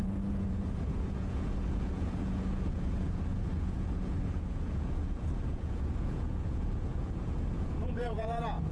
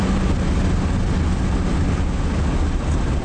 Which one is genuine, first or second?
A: second